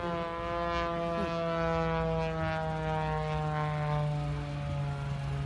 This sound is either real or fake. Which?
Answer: real